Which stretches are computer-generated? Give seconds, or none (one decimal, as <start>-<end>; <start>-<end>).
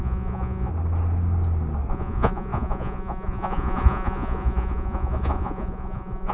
0.0-0.7; 1.9-6.3